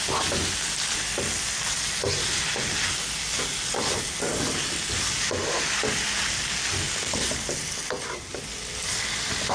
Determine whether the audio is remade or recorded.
recorded